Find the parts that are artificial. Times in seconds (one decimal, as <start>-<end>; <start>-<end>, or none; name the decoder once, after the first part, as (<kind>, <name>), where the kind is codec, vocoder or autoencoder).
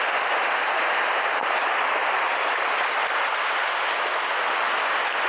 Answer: none